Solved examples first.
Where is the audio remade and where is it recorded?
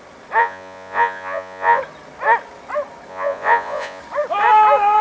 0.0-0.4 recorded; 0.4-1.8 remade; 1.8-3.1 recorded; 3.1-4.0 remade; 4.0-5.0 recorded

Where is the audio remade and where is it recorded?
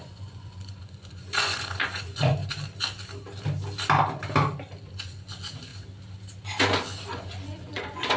0.0-2.4 remade; 2.4-4.9 recorded; 4.9-5.7 remade; 5.7-7.1 recorded; 7.1-8.2 remade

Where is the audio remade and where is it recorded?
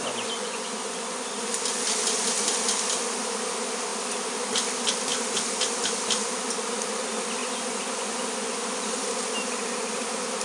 0.0-1.5 remade; 1.5-7.4 recorded; 7.4-9.0 remade; 9.0-10.4 recorded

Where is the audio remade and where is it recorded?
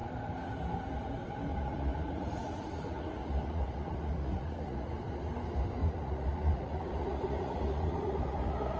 0.0-1.5 recorded; 1.5-4.9 remade; 4.9-5.8 recorded; 5.8-8.8 remade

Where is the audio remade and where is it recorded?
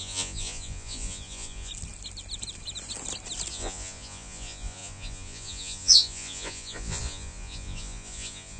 0.0-1.7 remade; 1.7-3.5 recorded; 3.5-8.6 remade